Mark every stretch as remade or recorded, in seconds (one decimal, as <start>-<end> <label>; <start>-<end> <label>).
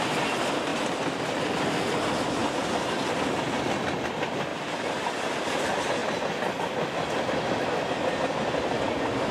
0.0-4.5 recorded; 4.5-5.3 remade; 5.3-9.3 recorded